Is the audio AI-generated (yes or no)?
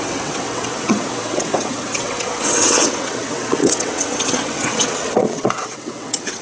yes